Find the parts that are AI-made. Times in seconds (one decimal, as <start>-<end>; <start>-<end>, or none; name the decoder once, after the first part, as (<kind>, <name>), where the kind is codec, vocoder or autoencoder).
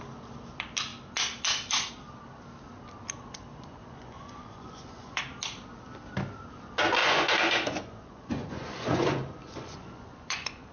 3.5-5.2 (vocoder, Vocos); 7.0-10.7